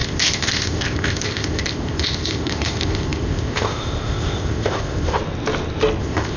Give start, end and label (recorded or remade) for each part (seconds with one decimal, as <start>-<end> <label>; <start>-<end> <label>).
0.0-5.2 remade; 5.2-6.0 recorded; 6.0-6.4 remade